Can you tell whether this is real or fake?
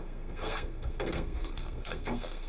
fake